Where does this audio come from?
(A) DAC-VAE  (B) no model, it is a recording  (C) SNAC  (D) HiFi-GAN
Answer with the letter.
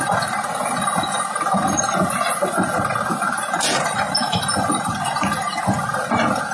B